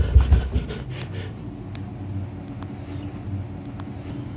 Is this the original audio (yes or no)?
yes